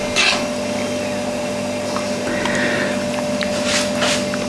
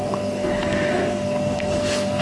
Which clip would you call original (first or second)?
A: first